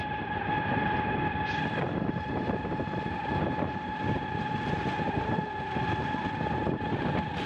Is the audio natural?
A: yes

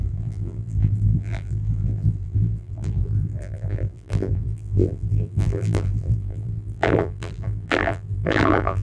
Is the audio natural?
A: no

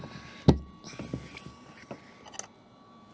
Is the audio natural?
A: yes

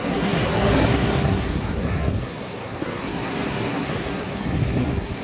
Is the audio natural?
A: no